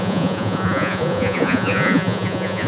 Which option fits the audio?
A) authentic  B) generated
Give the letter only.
B